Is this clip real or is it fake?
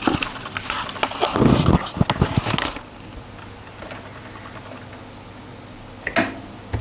real